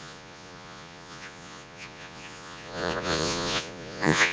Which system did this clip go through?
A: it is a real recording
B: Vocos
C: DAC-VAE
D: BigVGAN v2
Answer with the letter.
B